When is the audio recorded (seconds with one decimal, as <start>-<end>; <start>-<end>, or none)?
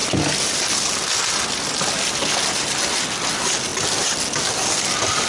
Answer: 0.0-5.3